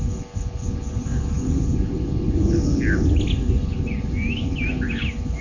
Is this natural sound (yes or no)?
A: yes